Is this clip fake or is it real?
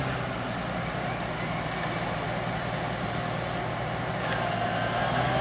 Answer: real